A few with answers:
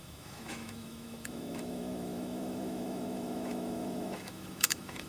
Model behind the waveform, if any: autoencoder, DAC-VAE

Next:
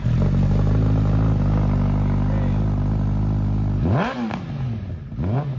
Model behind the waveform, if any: none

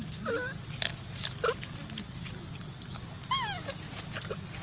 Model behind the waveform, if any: none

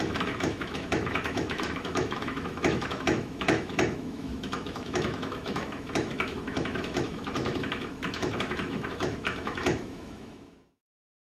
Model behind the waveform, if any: autoencoder, DAC-VAE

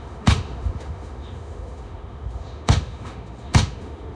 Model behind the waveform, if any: autoencoder, DAC-VAE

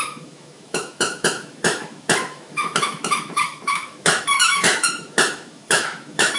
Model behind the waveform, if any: autoencoder, DAC-VAE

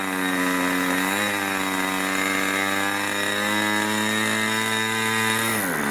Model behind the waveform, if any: none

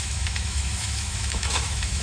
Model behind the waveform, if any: autoencoder, DAC-VAE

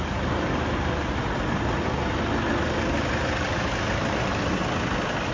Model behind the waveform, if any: none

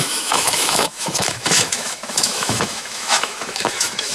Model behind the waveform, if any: autoencoder, DAC-VAE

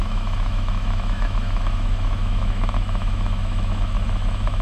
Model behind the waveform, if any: autoencoder, DAC-VAE